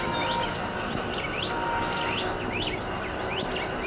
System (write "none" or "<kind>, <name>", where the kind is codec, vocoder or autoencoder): none